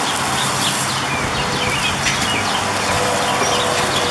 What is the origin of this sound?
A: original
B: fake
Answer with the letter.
A